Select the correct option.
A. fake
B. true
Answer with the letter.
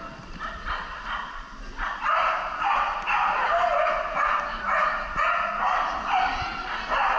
B